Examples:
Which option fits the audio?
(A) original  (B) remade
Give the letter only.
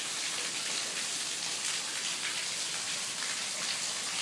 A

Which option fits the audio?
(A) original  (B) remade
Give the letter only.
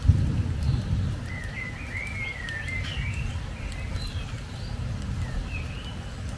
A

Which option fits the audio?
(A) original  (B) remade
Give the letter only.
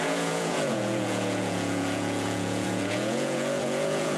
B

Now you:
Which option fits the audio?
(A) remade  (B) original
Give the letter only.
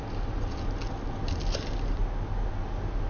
B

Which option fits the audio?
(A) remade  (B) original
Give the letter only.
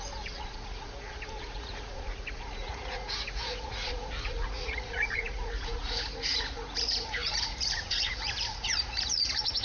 A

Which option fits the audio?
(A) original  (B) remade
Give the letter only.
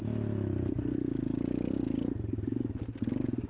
A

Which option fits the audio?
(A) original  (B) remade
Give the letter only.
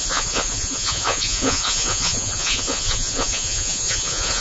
B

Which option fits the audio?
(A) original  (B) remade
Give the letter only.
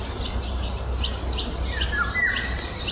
A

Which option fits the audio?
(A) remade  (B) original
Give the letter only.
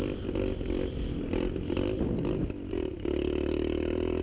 B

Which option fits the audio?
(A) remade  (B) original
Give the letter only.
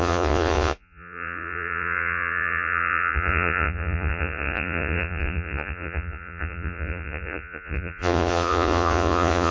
A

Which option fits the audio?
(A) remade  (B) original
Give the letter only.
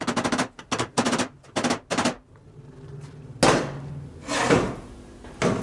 B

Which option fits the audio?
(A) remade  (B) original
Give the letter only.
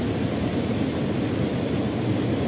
B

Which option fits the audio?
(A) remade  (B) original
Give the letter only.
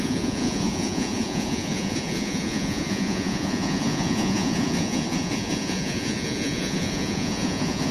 A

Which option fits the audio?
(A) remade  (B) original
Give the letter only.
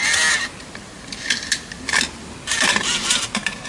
B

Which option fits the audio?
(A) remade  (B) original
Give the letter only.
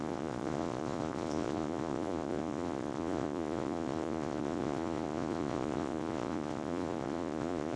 A